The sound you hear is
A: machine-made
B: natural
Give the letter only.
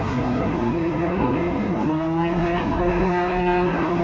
A